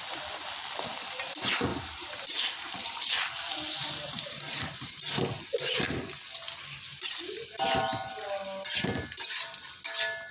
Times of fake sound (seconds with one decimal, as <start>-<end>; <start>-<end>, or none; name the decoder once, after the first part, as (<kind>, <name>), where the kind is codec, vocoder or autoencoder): 1.7-5.0 (vocoder, BigVGAN v2); 6.9-8.1